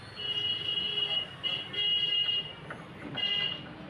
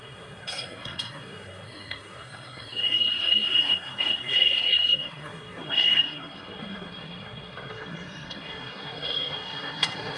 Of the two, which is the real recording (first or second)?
first